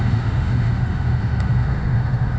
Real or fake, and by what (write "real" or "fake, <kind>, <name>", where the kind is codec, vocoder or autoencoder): fake, autoencoder, DAC-VAE